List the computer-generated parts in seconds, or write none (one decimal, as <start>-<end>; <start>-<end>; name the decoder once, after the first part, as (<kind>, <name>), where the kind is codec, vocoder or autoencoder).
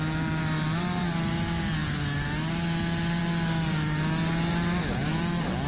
none